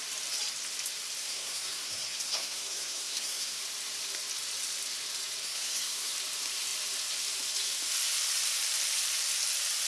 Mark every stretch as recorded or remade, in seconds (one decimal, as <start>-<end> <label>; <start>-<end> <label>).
0.0-1.2 recorded; 1.2-3.6 remade; 3.6-5.4 recorded; 5.4-6.1 remade; 6.1-9.9 recorded